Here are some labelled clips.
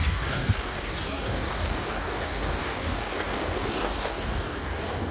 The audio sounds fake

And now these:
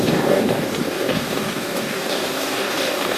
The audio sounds fake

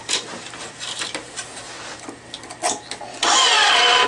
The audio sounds real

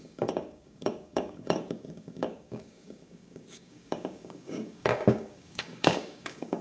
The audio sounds fake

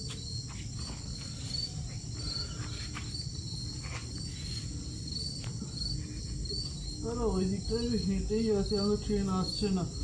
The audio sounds real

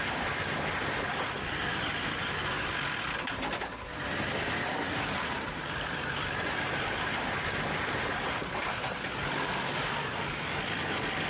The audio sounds real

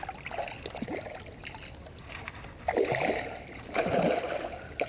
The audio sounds real